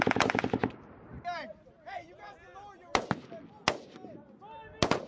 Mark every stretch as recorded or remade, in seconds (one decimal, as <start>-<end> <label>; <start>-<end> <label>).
0.0-5.1 recorded